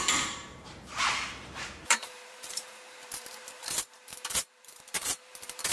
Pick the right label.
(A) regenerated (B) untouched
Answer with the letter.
A